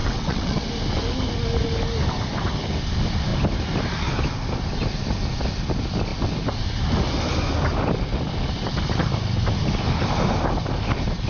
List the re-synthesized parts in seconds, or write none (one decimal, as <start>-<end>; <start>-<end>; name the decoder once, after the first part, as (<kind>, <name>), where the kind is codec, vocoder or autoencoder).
0.0-0.7 (vocoder, WaveNeXt)